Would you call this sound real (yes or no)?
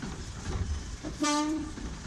no